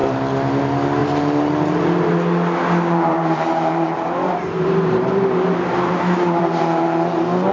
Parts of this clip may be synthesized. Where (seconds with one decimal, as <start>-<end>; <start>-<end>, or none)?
1.0-1.5; 3.1-6.4